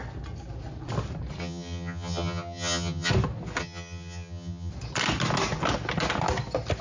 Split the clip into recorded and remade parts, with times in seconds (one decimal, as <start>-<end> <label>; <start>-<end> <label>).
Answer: 0.0-1.4 recorded; 1.4-3.1 remade; 3.1-3.6 recorded; 3.6-4.7 remade; 4.7-6.8 recorded